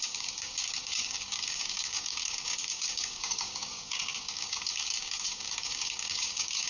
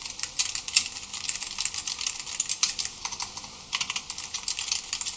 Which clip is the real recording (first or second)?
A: second